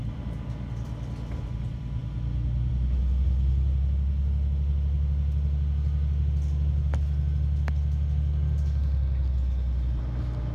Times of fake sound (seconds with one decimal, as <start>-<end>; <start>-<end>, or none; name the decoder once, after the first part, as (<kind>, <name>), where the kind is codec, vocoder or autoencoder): none

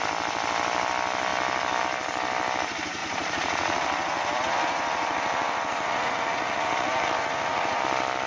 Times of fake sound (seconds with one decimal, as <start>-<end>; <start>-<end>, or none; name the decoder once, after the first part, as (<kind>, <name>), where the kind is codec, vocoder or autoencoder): 3.0-7.8 (vocoder, Vocos)

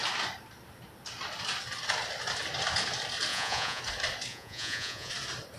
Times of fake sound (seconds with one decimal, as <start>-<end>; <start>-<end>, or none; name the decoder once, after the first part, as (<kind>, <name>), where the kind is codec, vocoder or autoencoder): 3.3-3.8 (vocoder, Vocos); 4.3-5.1

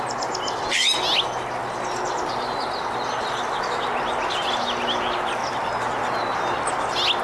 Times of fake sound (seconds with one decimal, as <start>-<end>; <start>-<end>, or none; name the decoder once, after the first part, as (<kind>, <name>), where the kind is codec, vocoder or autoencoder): none

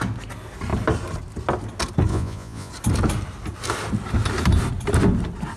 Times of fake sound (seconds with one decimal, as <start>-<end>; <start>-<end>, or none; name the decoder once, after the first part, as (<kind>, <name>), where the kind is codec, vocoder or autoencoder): 2.1-2.7 (vocoder, Vocos)

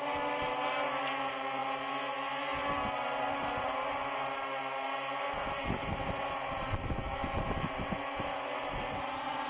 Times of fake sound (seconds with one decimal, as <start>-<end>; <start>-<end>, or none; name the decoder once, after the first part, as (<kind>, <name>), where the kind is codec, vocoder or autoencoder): none